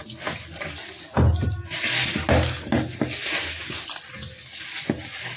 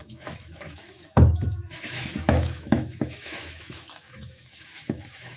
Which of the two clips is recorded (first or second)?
first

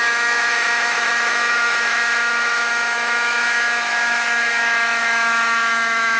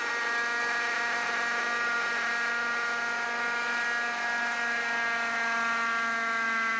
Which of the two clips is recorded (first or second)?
second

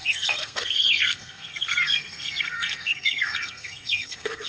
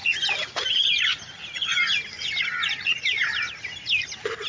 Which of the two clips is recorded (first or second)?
second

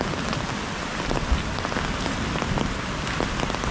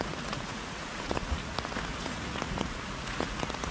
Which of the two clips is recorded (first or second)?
first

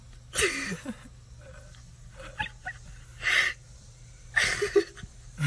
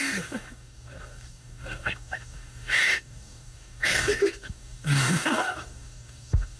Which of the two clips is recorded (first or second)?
first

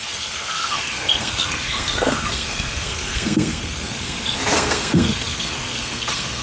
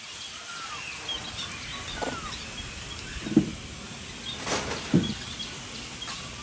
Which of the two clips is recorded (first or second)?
second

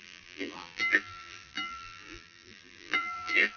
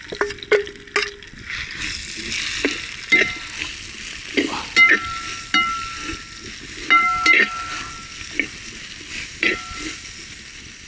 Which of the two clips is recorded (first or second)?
second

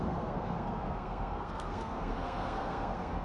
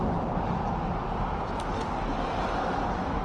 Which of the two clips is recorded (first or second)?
second